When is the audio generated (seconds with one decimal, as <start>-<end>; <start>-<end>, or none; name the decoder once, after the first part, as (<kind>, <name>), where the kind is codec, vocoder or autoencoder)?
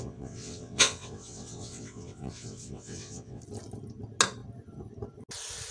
0.0-3.4 (vocoder, WaveNeXt)